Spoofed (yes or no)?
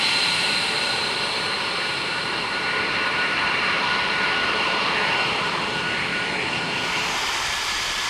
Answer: yes